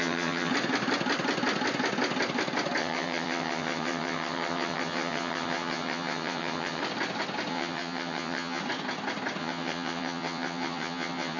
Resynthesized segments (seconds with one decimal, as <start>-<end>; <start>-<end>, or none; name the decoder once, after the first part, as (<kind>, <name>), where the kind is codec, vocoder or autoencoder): 0.0-0.5 (vocoder, HiFi-GAN); 2.8-6.8; 7.5-8.6; 9.4-11.4